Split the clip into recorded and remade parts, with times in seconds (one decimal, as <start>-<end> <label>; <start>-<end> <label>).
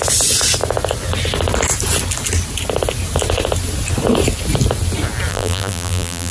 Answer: 0.0-5.3 recorded; 5.3-6.3 remade